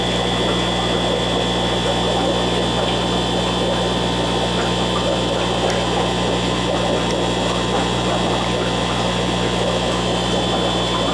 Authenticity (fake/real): real